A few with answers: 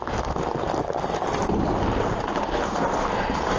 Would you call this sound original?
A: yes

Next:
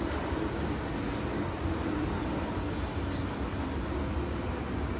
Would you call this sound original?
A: yes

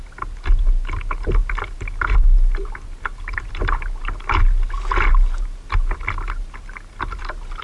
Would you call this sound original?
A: yes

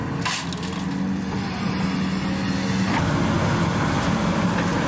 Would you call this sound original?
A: yes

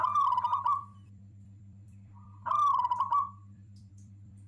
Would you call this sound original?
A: no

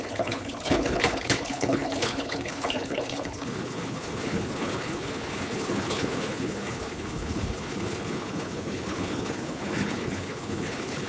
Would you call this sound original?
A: no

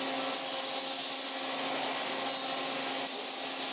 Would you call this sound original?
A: yes